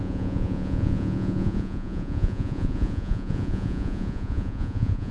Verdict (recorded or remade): remade